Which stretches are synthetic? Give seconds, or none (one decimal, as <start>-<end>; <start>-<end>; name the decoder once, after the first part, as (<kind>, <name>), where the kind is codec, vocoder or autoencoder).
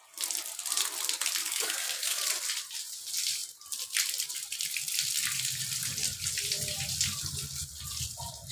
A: 1.4-2.2 (codec, DAC)